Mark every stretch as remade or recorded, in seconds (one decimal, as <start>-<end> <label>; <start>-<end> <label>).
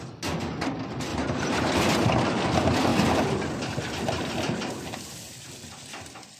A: 0.0-1.1 recorded; 1.1-1.7 remade; 1.7-6.4 recorded